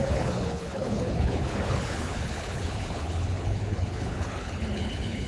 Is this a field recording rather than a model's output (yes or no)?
no